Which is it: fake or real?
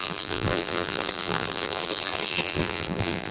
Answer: fake